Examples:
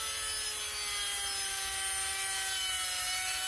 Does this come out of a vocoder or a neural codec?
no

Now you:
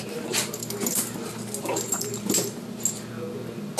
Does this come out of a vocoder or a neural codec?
no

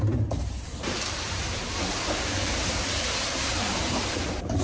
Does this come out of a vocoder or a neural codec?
yes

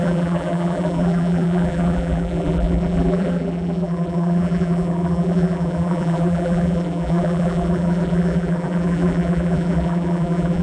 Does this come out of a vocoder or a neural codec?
yes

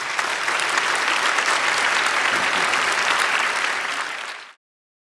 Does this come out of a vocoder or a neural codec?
yes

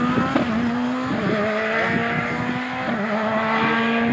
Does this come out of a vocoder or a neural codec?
no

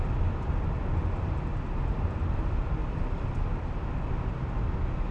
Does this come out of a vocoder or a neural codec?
no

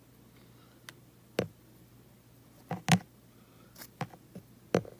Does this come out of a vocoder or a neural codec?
no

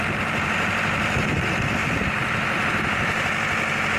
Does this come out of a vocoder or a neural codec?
yes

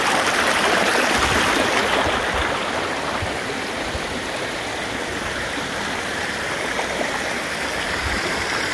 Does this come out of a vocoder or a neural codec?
yes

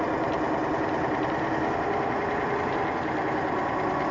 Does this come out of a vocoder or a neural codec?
yes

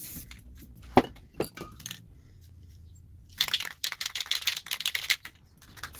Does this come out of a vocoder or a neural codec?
yes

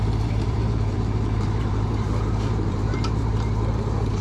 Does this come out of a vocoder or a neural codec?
yes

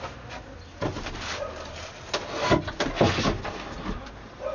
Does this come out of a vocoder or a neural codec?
no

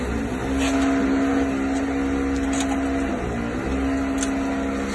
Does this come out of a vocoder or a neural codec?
no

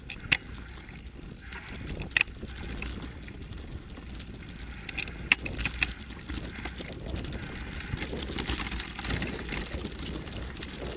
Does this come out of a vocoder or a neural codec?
no